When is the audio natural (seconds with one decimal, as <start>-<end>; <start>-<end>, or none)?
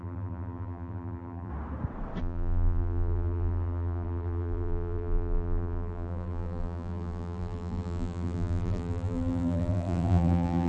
1.5-2.2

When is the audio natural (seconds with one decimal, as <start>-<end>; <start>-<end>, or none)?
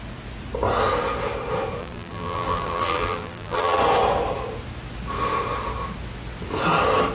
0.0-1.8; 3.8-7.1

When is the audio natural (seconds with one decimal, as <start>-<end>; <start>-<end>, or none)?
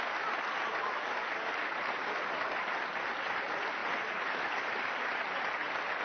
0.0-1.7; 2.7-3.8; 4.7-6.0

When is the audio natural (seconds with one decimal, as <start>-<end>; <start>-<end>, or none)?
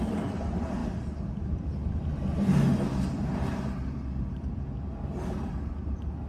0.0-6.3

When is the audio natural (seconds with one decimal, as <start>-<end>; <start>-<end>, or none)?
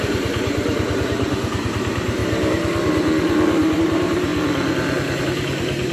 2.2-3.8; 4.3-5.2